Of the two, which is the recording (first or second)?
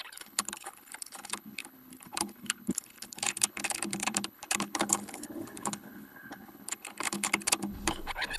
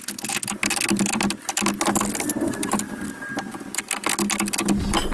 second